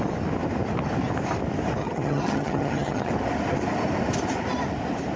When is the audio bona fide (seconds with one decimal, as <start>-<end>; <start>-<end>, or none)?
0.0-1.8; 3.1-5.2